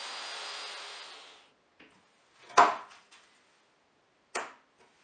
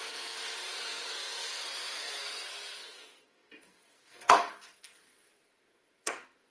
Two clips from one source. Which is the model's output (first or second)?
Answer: second